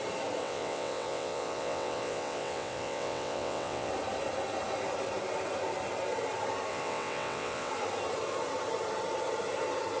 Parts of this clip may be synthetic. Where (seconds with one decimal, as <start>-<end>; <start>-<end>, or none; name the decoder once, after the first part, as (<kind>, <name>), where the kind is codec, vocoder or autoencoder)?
0.4-3.9 (vocoder, WaveNeXt); 6.7-7.7